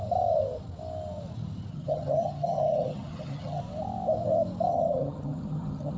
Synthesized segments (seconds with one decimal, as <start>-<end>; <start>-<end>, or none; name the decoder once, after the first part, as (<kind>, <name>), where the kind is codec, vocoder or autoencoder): 1.7-3.6 (vocoder, HiFi-GAN); 4.7-6.0